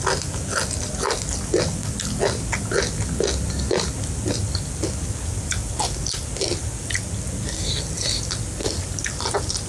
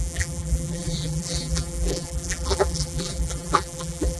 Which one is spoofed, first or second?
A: second